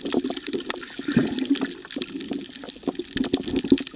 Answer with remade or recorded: recorded